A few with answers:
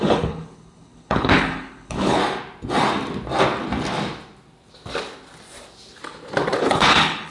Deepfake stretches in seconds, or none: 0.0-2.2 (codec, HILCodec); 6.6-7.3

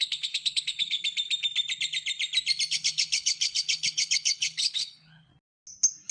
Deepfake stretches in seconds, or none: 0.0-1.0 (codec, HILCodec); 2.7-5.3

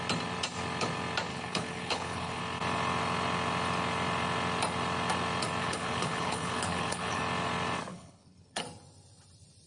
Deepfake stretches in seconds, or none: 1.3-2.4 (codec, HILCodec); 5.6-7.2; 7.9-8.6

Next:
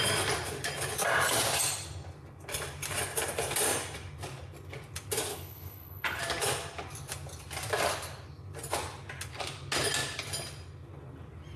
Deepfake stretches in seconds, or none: 5.3-6.2 (codec, HILCodec)

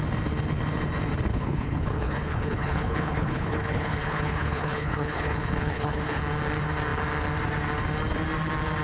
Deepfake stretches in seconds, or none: 1.3-6.2 (codec, HILCodec)

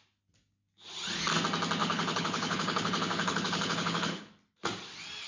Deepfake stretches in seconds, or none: 1.8-4.3 (codec, HILCodec)

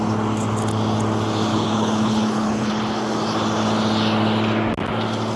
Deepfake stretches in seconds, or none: 1.5-2.7 (codec, HILCodec)